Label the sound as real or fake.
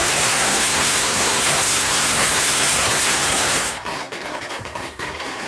fake